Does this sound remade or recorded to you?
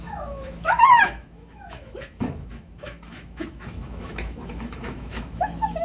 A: remade